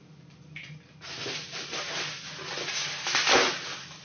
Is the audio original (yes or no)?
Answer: yes